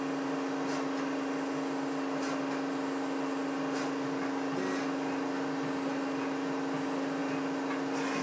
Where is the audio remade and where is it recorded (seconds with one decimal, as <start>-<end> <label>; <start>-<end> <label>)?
0.0-8.2 recorded